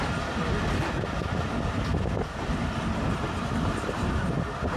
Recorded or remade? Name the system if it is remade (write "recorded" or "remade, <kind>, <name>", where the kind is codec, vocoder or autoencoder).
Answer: recorded